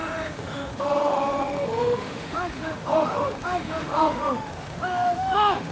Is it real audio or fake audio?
fake